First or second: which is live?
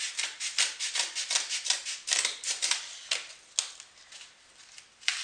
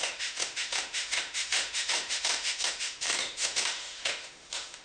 first